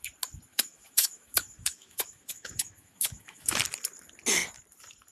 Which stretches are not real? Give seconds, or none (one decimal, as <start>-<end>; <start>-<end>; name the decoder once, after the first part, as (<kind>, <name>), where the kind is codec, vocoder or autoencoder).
0.5-3.6 (autoencoder, DAC-VAE)